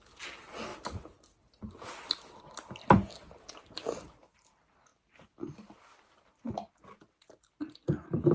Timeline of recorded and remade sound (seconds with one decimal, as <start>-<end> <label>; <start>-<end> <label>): 0.0-8.3 recorded